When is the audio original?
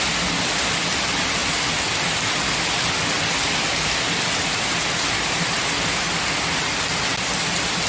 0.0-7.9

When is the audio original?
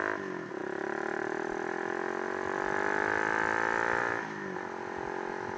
0.0-5.6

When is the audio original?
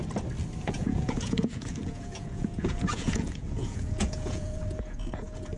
0.0-0.6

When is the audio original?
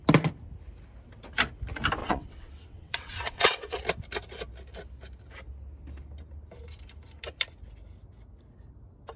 0.0-2.0; 3.8-9.2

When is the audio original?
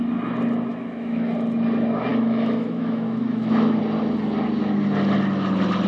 0.0-0.7; 1.3-2.1; 3.8-5.9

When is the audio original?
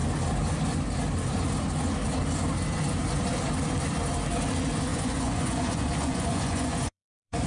0.0-4.9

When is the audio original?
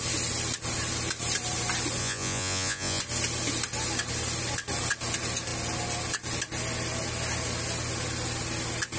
0.0-2.0; 3.0-9.0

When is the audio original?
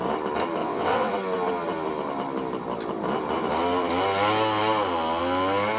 0.0-0.6; 1.1-5.8